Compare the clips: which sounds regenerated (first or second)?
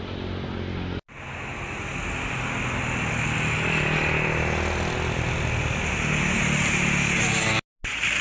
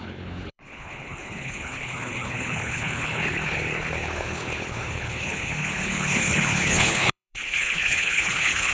second